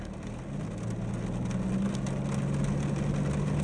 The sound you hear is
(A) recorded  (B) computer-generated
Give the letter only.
A